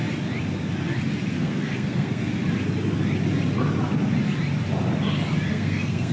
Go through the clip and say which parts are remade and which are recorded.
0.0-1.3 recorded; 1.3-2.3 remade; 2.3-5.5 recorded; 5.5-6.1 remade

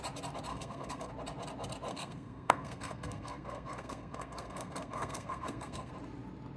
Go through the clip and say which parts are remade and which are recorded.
0.0-0.5 recorded; 0.5-1.1 remade; 1.1-1.9 recorded; 1.9-5.9 remade; 5.9-6.6 recorded

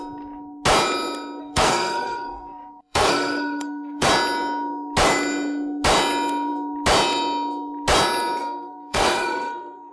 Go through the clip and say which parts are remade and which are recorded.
0.0-1.4 recorded; 1.4-4.1 remade; 4.1-8.4 recorded; 8.4-9.9 remade

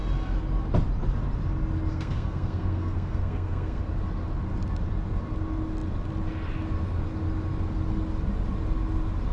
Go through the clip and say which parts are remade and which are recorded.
0.0-1.9 recorded; 1.9-3.8 remade; 3.8-9.3 recorded

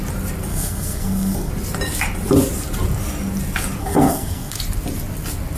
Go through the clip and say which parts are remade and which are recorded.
0.0-0.5 recorded; 0.5-1.5 remade; 1.5-3.8 recorded; 3.8-4.6 remade; 4.6-5.6 recorded

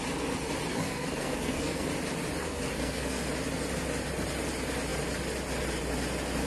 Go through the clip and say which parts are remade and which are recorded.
0.0-0.7 recorded; 0.7-1.9 remade; 1.9-2.4 recorded; 2.4-3.3 remade; 3.3-6.5 recorded

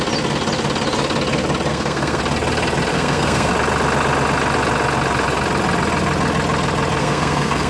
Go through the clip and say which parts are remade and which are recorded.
0.0-1.7 recorded; 1.7-2.2 remade; 2.2-2.9 recorded; 2.9-3.5 remade; 3.5-7.0 recorded; 7.0-7.7 remade